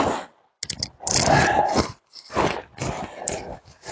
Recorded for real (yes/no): yes